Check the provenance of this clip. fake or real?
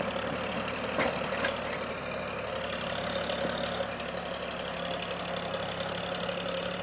real